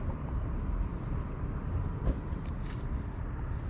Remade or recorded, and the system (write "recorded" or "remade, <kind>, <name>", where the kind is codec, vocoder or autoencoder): remade, vocoder, BigVGAN v2